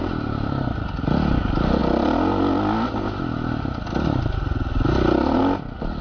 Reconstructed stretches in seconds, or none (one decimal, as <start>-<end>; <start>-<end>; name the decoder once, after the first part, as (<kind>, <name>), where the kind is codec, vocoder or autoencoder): none